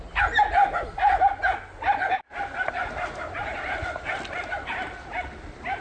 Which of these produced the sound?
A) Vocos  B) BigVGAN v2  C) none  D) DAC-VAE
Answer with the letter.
C